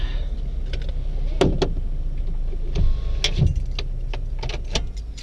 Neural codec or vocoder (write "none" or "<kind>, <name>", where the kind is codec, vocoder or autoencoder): none